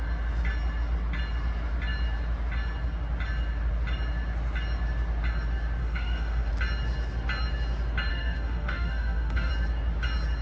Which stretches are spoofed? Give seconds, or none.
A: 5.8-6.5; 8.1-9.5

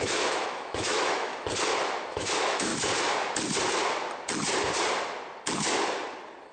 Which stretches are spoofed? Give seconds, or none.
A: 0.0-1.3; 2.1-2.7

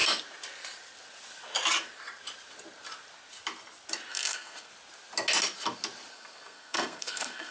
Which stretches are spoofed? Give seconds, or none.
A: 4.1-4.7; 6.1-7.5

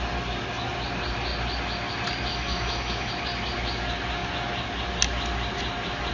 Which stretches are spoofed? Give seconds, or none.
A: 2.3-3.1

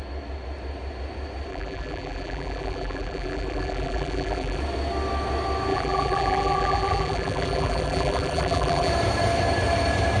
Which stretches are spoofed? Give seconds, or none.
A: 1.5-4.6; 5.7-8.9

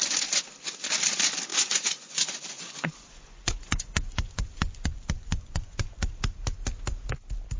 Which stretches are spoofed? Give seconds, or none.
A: 1.5-6.1

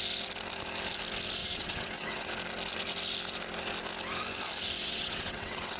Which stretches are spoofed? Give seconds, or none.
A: 1.4-2.3; 4.8-5.8

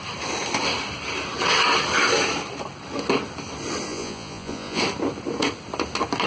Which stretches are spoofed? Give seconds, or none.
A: 3.9-4.8